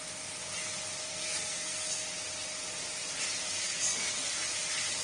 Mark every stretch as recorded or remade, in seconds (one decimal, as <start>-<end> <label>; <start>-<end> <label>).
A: 0.0-1.1 recorded; 1.1-2.1 remade; 2.1-3.4 recorded; 3.4-4.3 remade; 4.3-5.0 recorded